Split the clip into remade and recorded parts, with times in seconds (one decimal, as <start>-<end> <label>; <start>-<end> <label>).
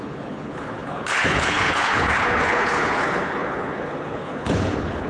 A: 0.0-5.1 remade